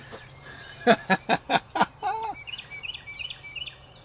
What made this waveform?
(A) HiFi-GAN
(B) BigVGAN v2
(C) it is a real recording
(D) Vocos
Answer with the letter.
B